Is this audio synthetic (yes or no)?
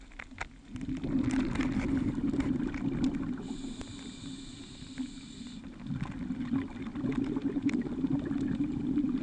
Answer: no